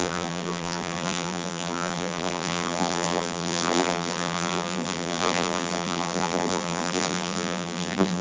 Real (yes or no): no